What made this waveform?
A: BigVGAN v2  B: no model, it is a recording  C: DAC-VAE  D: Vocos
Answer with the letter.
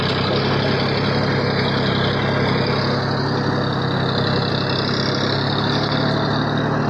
B